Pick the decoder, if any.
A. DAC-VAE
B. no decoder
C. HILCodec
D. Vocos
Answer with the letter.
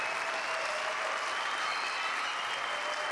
B